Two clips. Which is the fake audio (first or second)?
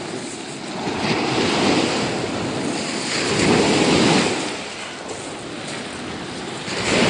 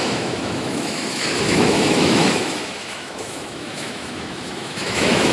second